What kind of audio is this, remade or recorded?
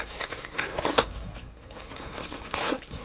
remade